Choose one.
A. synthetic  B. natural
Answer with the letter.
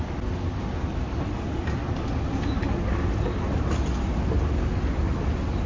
B